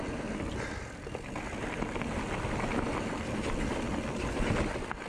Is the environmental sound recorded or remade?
recorded